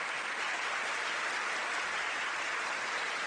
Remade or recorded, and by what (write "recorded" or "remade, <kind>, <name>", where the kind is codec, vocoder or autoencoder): recorded